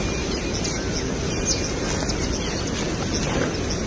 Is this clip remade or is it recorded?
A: recorded